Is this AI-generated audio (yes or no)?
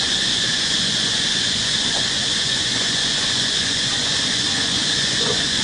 yes